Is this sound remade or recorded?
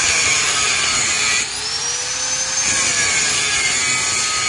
recorded